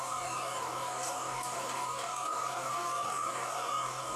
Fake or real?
fake